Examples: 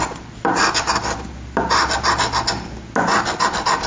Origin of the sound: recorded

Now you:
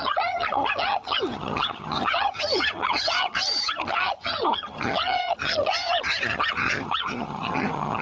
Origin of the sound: remade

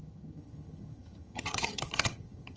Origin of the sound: remade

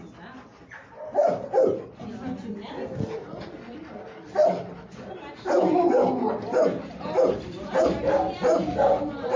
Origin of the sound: recorded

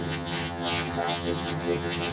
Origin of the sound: remade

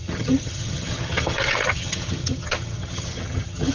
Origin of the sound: remade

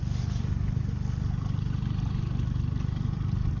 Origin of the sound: recorded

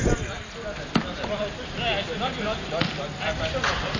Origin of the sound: recorded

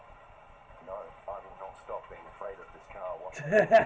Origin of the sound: recorded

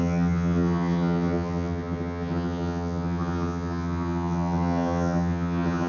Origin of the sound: remade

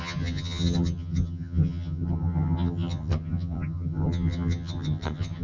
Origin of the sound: remade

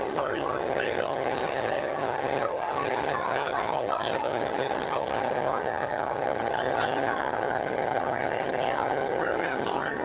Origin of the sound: remade